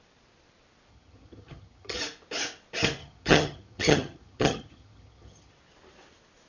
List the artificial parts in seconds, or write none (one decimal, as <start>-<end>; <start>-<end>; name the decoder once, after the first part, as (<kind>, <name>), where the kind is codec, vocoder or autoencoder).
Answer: 0.9-2.0 (vocoder, HiFi-GAN); 3.0-5.5